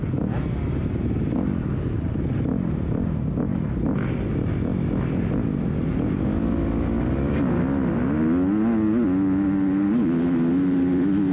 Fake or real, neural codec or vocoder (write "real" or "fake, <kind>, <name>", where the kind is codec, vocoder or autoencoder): real